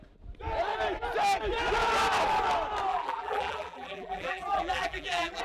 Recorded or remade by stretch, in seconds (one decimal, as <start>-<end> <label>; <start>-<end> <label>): 0.0-2.9 recorded; 2.9-5.4 remade